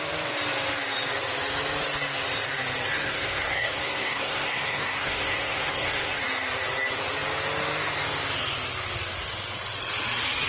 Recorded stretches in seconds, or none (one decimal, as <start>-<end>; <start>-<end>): 0.0-2.9; 6.2-10.5